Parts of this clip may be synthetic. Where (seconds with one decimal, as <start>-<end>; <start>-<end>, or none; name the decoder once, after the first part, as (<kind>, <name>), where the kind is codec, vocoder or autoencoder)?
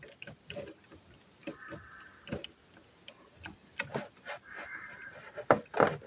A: none